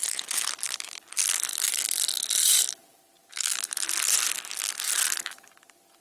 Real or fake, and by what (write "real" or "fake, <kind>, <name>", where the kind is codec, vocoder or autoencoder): fake, vocoder, BigVGAN v2